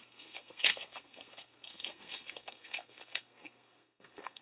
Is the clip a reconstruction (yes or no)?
yes